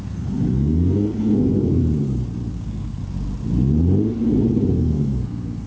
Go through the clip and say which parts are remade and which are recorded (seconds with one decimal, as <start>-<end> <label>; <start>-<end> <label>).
0.0-1.8 remade; 1.8-2.5 recorded; 2.5-3.0 remade; 3.0-4.7 recorded; 4.7-5.7 remade